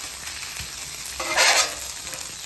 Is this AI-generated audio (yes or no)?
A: no